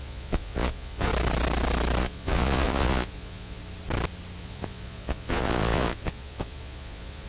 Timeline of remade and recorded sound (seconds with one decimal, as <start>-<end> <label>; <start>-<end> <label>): 0.0-1.1 remade; 1.1-2.0 recorded; 2.0-3.6 remade; 3.6-4.4 recorded; 4.4-7.3 remade